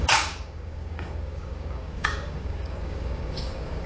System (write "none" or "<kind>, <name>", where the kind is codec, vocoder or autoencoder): codec, DAC